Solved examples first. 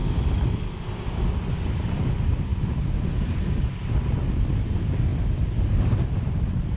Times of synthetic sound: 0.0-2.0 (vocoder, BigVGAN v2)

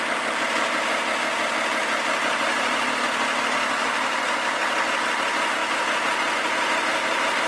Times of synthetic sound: none